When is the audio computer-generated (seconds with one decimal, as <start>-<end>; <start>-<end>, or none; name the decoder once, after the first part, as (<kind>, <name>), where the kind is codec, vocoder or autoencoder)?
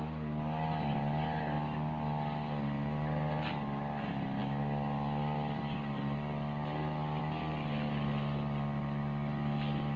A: none